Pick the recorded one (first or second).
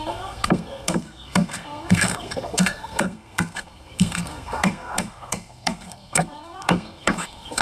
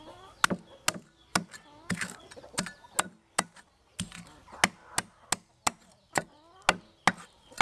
second